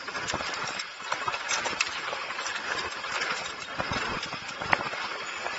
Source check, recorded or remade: remade